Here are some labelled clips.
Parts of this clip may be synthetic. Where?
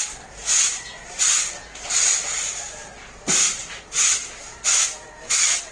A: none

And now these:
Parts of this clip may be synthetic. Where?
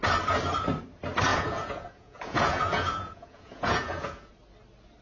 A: 1.3-4.3 (vocoder, Vocos)